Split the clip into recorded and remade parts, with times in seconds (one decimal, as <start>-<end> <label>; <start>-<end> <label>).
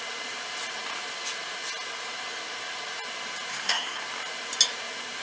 0.0-3.5 recorded; 3.5-4.0 remade; 4.0-5.2 recorded